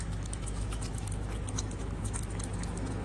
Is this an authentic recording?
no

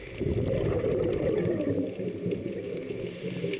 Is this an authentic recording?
yes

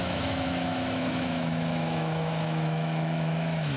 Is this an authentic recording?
no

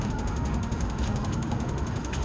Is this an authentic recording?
no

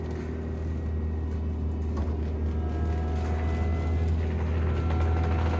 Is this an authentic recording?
yes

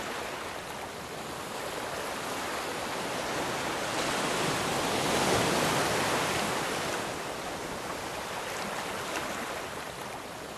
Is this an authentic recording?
yes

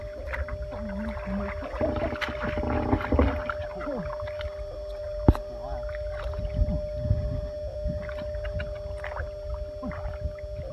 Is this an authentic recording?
yes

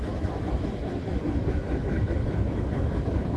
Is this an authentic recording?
no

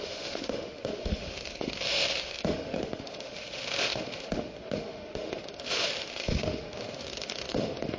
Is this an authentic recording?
no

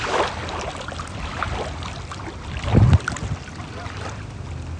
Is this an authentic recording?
yes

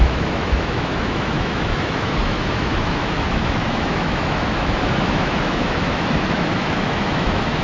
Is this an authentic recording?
no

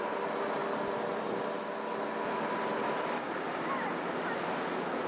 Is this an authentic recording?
yes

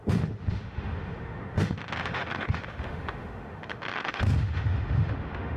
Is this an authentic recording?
no